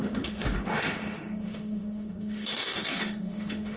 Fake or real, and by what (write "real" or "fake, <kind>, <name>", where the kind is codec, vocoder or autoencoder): fake, autoencoder, DAC-VAE